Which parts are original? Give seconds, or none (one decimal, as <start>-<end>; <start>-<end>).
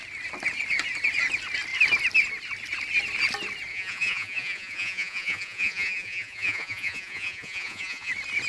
0.0-3.7; 8.1-8.5